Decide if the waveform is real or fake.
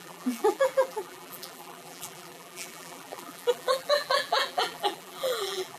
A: fake